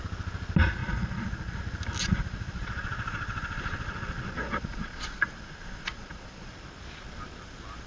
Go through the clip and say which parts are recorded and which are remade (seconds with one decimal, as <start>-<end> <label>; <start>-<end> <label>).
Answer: 0.0-0.8 recorded; 0.8-1.6 remade; 1.6-2.0 recorded; 2.0-6.5 remade; 6.5-7.9 recorded